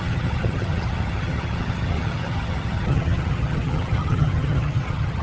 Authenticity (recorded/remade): remade